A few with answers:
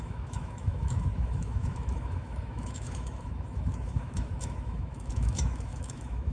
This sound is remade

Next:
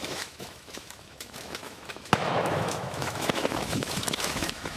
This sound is remade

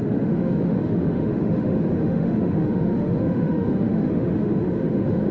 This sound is remade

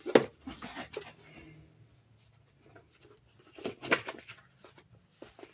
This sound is recorded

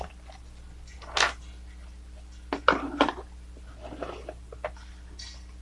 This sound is recorded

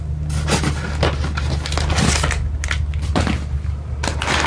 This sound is recorded